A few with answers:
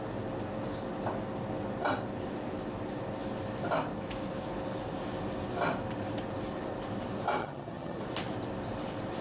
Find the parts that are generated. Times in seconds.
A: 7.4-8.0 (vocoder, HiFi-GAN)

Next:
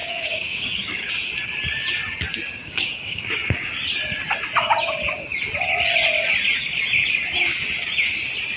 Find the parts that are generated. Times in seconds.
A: 0.0-1.1 (codec, DAC); 2.6-3.7

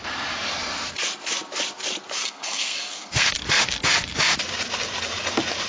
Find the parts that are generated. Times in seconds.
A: 2.2-3.3 (codec, SNAC)

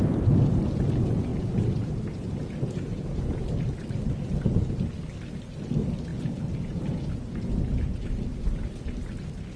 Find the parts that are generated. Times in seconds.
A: 1.3-3.4 (vocoder, Vocos); 6.1-8.1